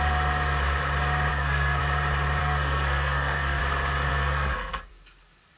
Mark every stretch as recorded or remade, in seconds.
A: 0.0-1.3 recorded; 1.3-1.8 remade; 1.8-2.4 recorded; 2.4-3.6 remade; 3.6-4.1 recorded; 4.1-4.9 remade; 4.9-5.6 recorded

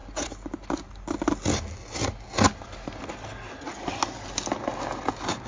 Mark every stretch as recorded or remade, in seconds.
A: 0.0-5.5 recorded

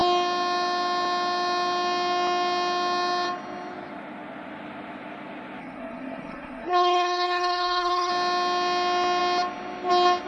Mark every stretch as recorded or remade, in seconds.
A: 0.0-5.6 recorded; 5.6-8.1 remade; 8.1-10.3 recorded

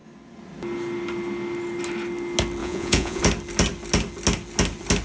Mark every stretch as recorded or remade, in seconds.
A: 0.0-2.6 recorded; 2.6-3.2 remade; 3.2-5.0 recorded

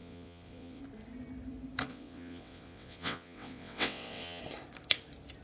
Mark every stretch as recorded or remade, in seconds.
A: 0.0-0.8 remade; 0.8-1.9 recorded; 1.9-4.4 remade; 4.4-5.4 recorded

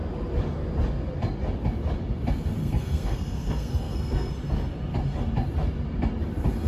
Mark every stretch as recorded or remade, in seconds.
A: 0.0-2.6 recorded; 2.6-4.3 remade; 4.3-6.7 recorded

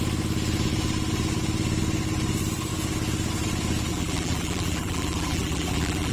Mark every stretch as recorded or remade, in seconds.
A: 0.0-3.9 recorded; 3.9-6.1 remade